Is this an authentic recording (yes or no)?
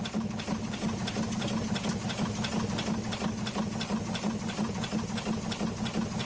yes